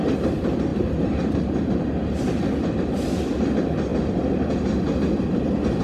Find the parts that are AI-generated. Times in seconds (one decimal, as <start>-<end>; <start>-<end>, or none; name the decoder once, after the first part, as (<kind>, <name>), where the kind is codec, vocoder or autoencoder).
none